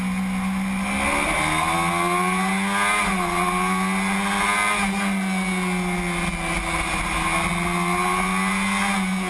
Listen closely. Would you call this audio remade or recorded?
recorded